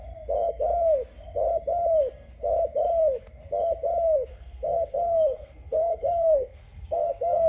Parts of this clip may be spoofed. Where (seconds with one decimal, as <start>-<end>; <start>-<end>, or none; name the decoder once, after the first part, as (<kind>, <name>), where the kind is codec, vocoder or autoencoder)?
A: 4.3-7.5 (codec, SNAC)